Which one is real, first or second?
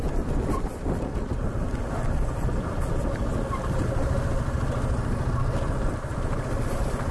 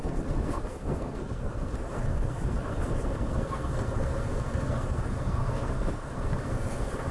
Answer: first